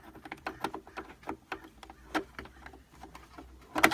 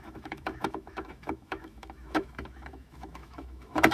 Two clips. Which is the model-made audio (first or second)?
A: second